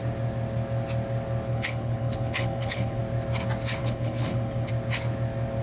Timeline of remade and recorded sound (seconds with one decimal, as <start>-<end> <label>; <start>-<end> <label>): 0.0-1.5 recorded; 1.5-3.0 remade; 3.0-3.8 recorded; 3.8-4.7 remade; 4.7-5.6 recorded